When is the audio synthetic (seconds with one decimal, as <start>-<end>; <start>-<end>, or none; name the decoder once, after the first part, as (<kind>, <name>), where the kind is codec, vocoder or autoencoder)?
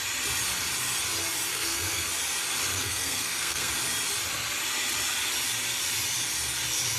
1.5-2.1 (codec, SNAC); 2.7-3.7